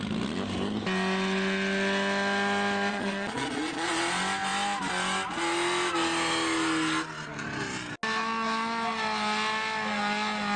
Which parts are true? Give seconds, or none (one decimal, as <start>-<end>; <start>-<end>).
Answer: 0.0-2.9; 3.9-10.6